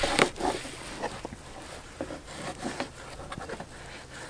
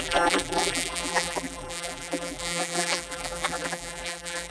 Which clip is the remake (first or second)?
second